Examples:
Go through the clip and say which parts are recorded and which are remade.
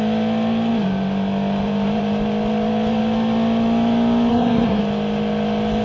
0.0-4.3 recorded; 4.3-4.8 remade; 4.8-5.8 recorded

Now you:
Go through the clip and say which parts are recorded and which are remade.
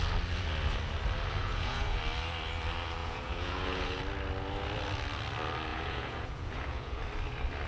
0.0-1.4 recorded; 1.4-2.0 remade; 2.0-3.0 recorded; 3.0-4.0 remade; 4.0-5.7 recorded; 5.7-7.0 remade; 7.0-7.7 recorded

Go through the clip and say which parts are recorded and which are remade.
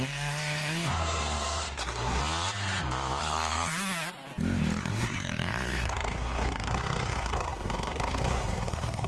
0.0-2.2 remade; 2.2-3.2 recorded; 3.2-3.7 remade; 3.7-4.8 recorded; 4.8-9.1 remade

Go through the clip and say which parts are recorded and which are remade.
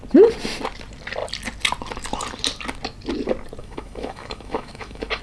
0.0-3.6 recorded; 3.6-5.2 remade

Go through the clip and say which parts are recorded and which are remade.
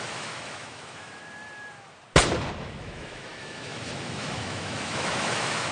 0.0-1.2 remade; 1.2-2.6 recorded; 2.6-5.7 remade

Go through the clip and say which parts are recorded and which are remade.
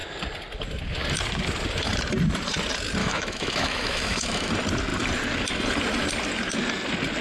0.0-3.0 recorded; 3.0-4.5 remade; 4.5-7.2 recorded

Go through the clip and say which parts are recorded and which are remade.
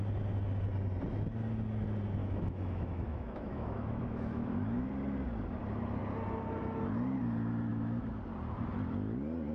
0.0-2.2 recorded; 2.2-4.9 remade; 4.9-7.7 recorded; 7.7-8.2 remade; 8.2-9.5 recorded